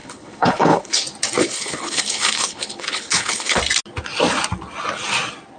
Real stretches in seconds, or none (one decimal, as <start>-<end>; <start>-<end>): 1.0-1.4; 3.6-5.6